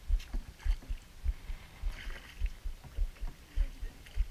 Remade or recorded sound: recorded